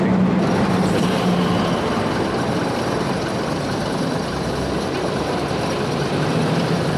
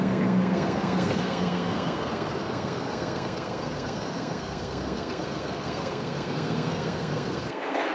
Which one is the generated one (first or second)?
second